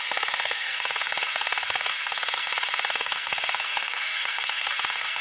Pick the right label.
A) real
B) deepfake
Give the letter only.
B